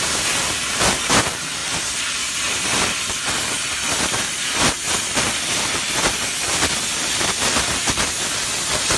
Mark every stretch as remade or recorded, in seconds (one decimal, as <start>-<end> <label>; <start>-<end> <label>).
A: 0.0-1.6 recorded; 1.6-6.2 remade; 6.2-6.9 recorded; 6.9-8.0 remade; 8.0-9.0 recorded

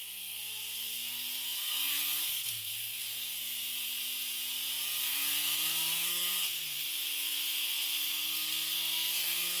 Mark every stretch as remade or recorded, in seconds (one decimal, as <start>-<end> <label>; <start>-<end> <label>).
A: 0.0-3.4 remade; 3.4-5.0 recorded; 5.0-9.6 remade